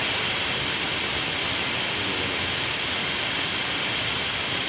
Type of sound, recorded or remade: recorded